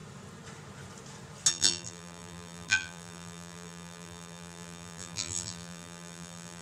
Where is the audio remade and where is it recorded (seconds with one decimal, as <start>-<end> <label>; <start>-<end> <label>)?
0.0-1.5 recorded; 1.5-6.6 remade